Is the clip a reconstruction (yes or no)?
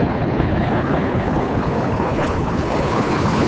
yes